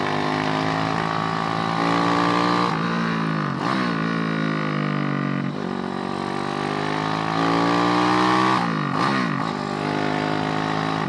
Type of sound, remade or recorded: recorded